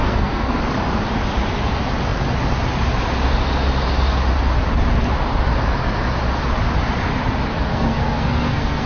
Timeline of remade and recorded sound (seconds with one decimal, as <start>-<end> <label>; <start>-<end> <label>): 0.0-0.6 remade; 0.6-7.7 recorded; 7.7-8.9 remade